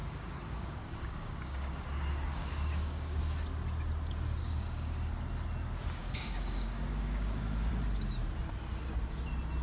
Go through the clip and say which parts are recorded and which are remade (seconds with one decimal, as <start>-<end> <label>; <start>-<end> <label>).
0.0-3.2 remade; 3.2-4.4 recorded; 4.4-5.1 remade; 5.1-6.0 recorded; 6.0-7.7 remade; 7.7-9.6 recorded